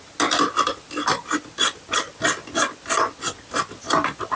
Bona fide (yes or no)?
yes